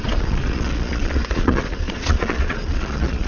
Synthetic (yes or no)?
yes